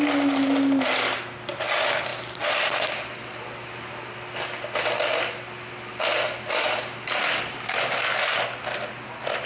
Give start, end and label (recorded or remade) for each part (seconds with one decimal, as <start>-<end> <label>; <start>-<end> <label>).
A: 0.0-9.5 recorded